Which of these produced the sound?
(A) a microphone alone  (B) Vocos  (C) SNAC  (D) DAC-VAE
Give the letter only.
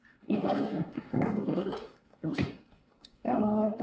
C